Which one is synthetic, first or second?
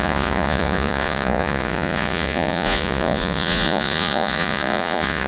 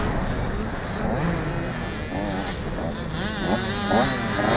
first